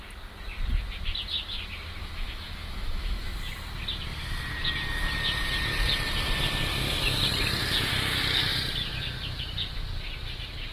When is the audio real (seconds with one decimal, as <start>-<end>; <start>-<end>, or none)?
0.0-2.0; 3.4-10.7